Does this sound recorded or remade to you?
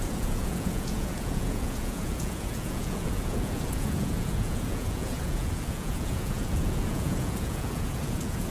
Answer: remade